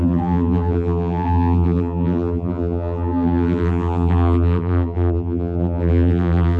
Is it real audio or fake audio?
fake